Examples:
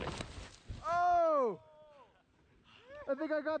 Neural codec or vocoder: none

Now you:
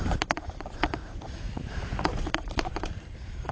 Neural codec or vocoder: vocoder, BigVGAN v2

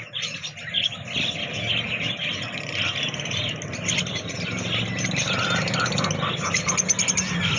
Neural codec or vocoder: none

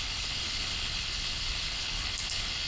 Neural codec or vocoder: codec, HILCodec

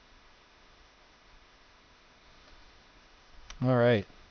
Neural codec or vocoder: autoencoder, DAC-VAE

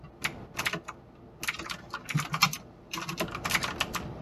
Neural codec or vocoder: none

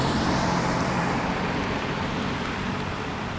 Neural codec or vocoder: vocoder, BigVGAN v2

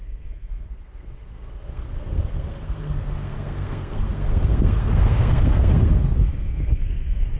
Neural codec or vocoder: codec, SNAC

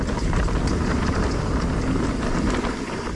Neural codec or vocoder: none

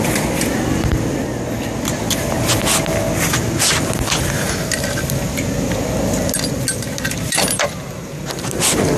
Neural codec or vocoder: none